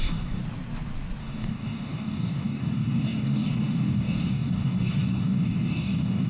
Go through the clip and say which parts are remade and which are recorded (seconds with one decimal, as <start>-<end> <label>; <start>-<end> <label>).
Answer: 0.0-0.4 remade; 0.4-1.2 recorded; 1.2-6.3 remade